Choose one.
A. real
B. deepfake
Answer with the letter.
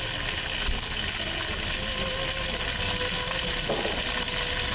A